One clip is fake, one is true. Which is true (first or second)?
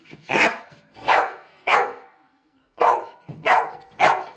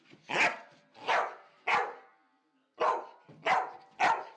second